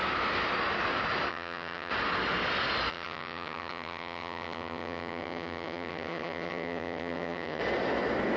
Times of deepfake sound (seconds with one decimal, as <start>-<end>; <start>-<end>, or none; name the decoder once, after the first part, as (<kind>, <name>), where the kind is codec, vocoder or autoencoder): 1.3-1.9 (vocoder, HiFi-GAN); 2.9-7.6